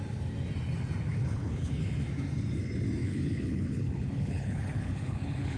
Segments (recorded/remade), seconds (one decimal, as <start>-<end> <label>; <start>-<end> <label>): 0.0-1.1 recorded; 1.1-1.8 remade; 1.8-3.0 recorded; 3.0-5.6 remade